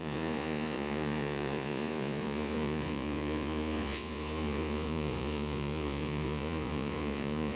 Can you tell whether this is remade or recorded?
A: remade